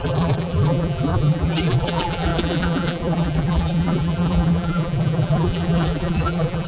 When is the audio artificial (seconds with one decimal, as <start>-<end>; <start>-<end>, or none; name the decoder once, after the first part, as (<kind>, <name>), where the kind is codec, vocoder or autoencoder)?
0.0-6.7 (vocoder, BigVGAN v2)